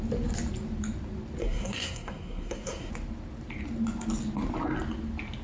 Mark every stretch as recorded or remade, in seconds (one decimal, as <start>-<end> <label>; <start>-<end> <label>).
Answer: 0.0-1.4 recorded; 1.4-2.9 remade; 2.9-5.4 recorded